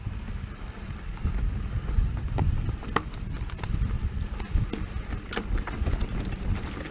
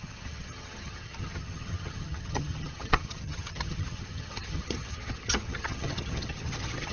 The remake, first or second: second